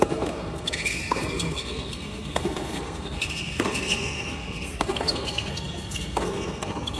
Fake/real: fake